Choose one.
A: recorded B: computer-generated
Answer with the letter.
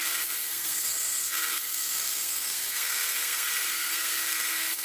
B